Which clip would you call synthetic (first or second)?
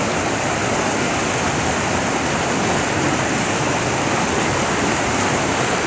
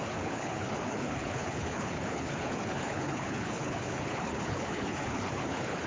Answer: second